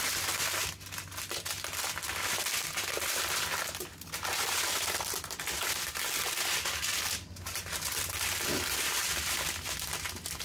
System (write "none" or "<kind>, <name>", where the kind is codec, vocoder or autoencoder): none